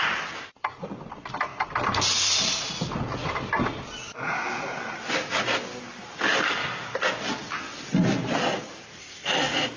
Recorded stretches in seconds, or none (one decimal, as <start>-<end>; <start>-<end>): 0.0-9.0